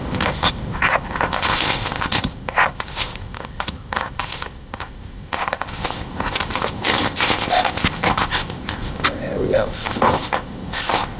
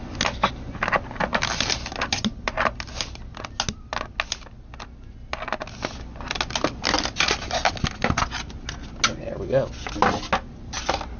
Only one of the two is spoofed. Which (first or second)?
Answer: first